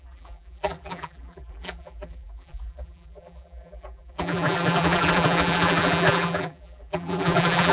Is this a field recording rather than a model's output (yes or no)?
no